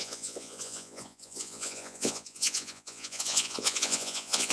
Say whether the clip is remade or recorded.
remade